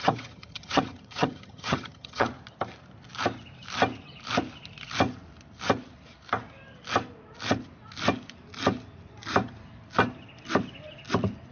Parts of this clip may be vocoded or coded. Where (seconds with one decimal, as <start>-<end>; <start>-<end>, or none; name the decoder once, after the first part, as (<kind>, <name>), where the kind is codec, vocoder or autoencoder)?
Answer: 0.0-2.3 (vocoder, HiFi-GAN)